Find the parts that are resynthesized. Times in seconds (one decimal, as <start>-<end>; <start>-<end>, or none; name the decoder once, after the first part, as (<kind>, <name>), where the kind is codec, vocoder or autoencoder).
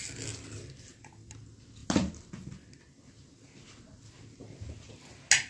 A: none